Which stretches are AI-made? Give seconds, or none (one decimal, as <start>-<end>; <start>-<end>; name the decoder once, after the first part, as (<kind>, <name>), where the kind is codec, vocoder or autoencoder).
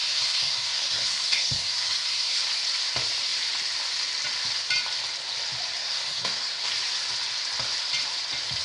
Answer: 0.0-2.4 (codec, SNAC); 5.8-6.7